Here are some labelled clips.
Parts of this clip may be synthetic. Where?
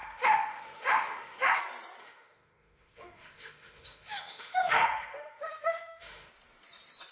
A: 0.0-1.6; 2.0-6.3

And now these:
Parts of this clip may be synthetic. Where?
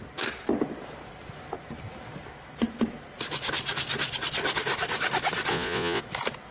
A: 5.5-6.0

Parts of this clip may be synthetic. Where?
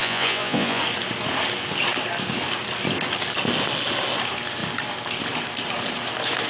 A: 0.0-0.8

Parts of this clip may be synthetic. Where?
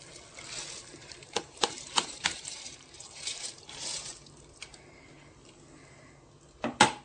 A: 0.9-5.1